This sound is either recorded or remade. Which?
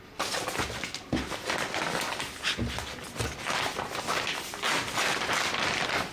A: recorded